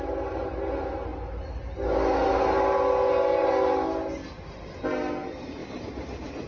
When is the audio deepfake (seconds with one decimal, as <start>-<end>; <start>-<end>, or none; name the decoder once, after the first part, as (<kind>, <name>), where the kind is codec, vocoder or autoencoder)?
none

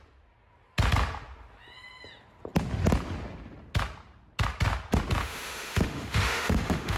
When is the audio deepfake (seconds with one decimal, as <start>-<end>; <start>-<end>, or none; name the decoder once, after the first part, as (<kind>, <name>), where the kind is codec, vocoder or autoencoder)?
5.2-7.0 (autoencoder, DAC-VAE)